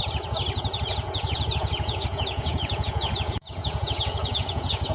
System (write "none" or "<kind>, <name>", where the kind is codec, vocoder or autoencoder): vocoder, Vocos